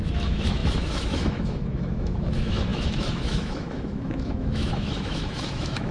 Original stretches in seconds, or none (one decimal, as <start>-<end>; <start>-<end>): none